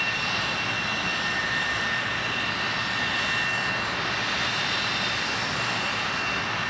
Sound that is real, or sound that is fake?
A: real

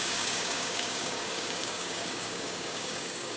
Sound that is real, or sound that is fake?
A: fake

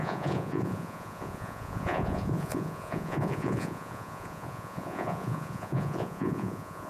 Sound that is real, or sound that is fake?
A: fake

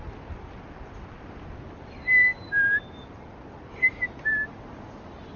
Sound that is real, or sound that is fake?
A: real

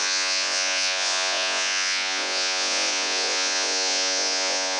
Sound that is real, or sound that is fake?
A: fake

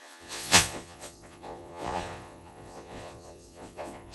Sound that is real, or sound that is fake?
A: fake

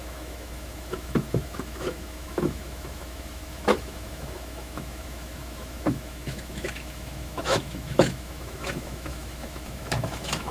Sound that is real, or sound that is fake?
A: fake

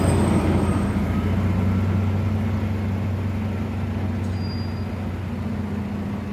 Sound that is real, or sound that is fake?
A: real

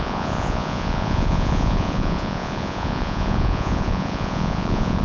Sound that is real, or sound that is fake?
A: fake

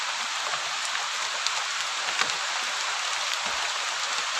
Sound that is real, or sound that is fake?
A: real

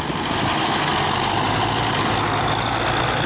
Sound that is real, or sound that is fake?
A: real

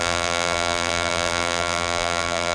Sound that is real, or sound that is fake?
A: fake